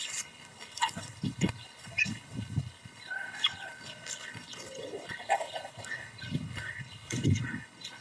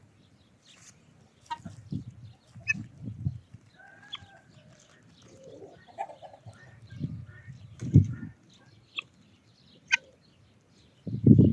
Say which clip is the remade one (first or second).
first